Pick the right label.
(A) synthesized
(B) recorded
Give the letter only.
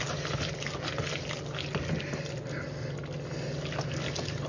B